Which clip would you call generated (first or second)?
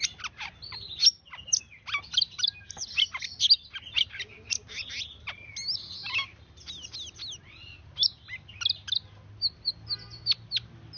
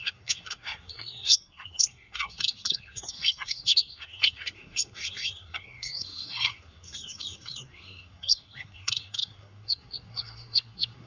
second